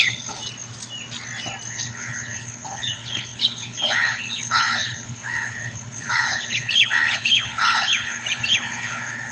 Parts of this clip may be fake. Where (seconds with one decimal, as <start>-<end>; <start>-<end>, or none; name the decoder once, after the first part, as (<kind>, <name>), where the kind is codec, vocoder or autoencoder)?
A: 0.0-0.4 (codec, HILCodec); 1.7-9.3